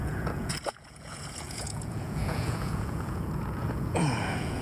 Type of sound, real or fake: fake